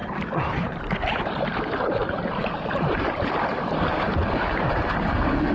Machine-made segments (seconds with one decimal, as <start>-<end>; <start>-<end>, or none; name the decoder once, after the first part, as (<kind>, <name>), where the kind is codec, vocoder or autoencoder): 0.0-0.8 (vocoder, BigVGAN v2); 2.0-4.1